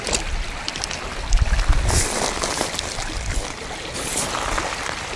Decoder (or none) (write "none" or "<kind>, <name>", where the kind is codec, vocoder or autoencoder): none